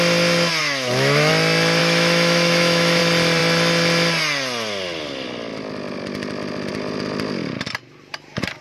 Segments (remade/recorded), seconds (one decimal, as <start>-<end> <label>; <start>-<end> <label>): 0.0-0.6 recorded; 0.6-1.3 remade; 1.3-1.8 recorded; 1.8-3.0 remade; 3.0-8.6 recorded

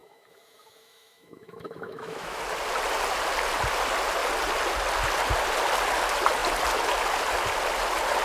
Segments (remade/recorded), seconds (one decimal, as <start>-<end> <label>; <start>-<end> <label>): 0.0-2.4 remade; 2.4-8.2 recorded